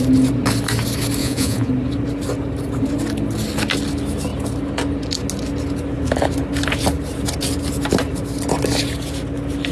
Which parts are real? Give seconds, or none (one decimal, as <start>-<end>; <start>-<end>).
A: 0.0-1.2; 1.7-9.7